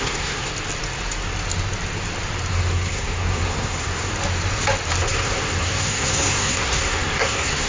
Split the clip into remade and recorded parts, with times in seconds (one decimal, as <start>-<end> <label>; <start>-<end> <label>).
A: 0.0-0.5 remade; 0.5-2.5 recorded; 2.5-4.1 remade; 4.1-5.0 recorded; 5.0-7.7 remade